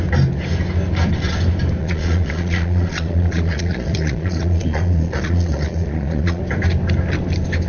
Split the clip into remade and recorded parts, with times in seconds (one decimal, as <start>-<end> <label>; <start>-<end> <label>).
0.0-1.8 recorded; 1.8-6.4 remade; 6.4-7.7 recorded